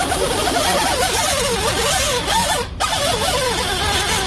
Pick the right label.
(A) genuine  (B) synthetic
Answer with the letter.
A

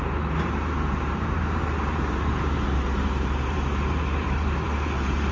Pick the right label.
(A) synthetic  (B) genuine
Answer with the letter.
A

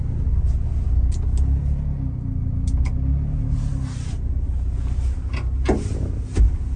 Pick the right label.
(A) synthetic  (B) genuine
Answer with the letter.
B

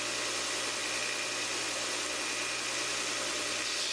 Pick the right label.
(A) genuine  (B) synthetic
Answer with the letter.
A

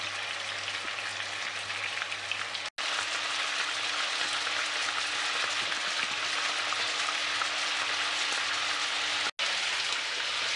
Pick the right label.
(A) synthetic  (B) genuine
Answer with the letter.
B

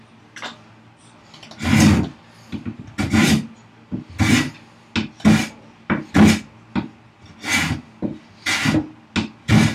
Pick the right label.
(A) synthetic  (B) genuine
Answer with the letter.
B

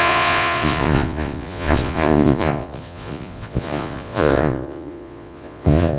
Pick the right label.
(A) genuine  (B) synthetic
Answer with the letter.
B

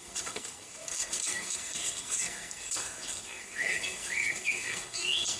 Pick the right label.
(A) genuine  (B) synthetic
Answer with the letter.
B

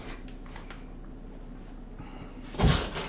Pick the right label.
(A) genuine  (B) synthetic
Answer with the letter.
A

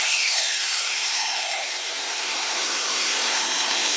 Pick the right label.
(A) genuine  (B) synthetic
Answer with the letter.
B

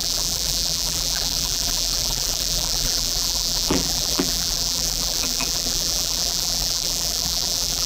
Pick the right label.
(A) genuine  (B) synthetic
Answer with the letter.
B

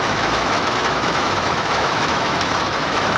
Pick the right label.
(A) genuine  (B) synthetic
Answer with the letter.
B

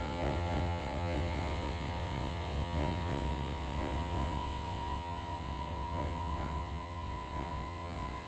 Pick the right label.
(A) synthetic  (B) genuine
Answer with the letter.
A